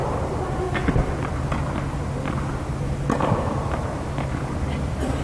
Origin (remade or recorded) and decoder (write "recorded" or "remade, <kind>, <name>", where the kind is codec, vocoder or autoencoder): recorded